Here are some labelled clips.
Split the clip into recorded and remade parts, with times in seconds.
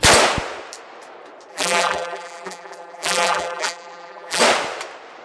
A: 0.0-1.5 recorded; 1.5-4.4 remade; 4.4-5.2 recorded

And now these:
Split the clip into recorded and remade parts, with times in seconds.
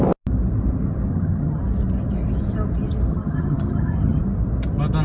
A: 0.0-1.1 recorded; 1.1-1.6 remade; 1.6-3.1 recorded; 3.1-4.2 remade; 4.2-5.0 recorded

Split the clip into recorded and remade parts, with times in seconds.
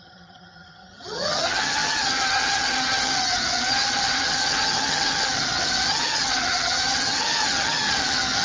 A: 0.0-8.4 remade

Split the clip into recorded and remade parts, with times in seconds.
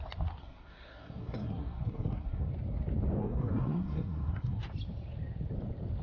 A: 0.0-0.4 recorded; 0.4-2.5 remade; 2.5-3.2 recorded; 3.2-4.6 remade; 4.6-6.0 recorded